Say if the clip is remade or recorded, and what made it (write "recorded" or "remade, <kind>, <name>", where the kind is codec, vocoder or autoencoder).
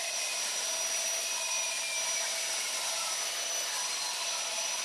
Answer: recorded